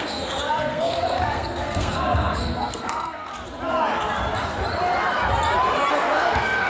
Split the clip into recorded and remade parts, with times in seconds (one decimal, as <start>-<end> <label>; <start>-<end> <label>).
0.0-3.3 remade; 3.3-5.9 recorded; 5.9-6.7 remade